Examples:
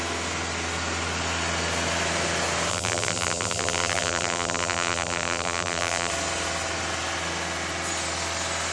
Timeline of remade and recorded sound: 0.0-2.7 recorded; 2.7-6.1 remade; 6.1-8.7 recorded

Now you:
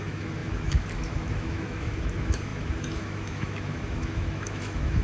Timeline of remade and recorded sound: 0.0-5.0 remade

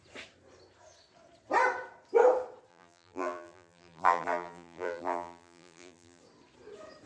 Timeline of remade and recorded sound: 0.0-2.7 recorded; 2.7-6.2 remade; 6.2-7.1 recorded

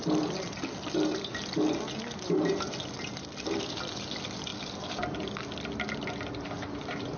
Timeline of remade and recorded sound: 0.0-7.2 recorded

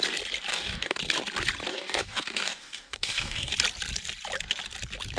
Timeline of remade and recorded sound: 0.0-0.5 recorded; 0.5-1.0 remade; 1.0-1.7 recorded; 1.7-3.5 remade; 3.5-5.2 recorded

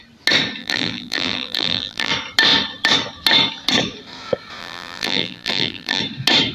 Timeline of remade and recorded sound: 0.0-0.6 recorded; 0.6-2.1 remade; 2.1-4.6 recorded; 4.6-6.0 remade; 6.0-6.5 recorded